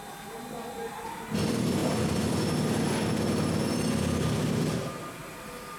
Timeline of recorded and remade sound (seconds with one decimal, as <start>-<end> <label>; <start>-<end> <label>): 0.0-5.8 recorded

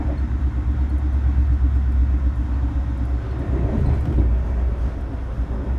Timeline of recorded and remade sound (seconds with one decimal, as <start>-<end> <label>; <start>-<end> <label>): 0.0-5.8 recorded

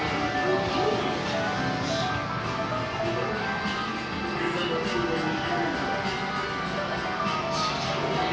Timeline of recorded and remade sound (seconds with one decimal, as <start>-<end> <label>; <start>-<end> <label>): 0.0-8.3 recorded

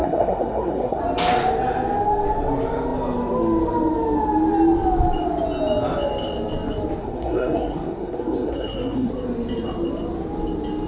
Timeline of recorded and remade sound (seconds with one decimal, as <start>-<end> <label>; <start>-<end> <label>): 0.0-1.0 remade; 1.0-7.0 recorded; 7.0-9.1 remade; 9.1-10.9 recorded

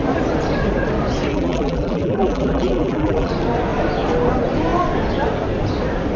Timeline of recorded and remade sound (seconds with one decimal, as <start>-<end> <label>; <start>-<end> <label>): 0.0-1.3 recorded; 1.3-3.3 remade; 3.3-6.2 recorded

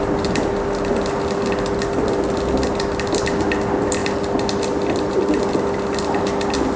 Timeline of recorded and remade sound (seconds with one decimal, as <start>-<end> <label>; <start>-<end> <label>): 0.0-6.8 recorded